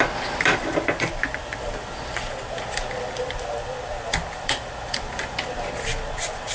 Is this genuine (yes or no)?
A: no